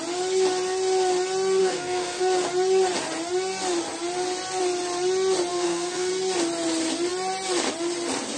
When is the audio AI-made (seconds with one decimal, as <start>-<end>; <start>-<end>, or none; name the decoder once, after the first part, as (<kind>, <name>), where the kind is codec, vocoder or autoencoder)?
1.6-2.2 (codec, SNAC); 5.5-6.1